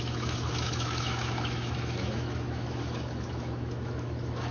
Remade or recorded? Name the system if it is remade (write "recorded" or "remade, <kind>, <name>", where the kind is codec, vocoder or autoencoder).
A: remade, autoencoder, DAC-VAE